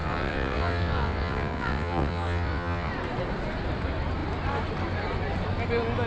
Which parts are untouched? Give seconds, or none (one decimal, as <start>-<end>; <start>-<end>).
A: 2.9-6.1